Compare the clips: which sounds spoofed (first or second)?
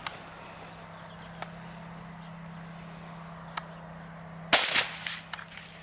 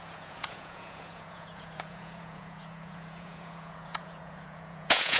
second